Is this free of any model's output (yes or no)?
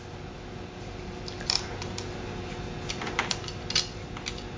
yes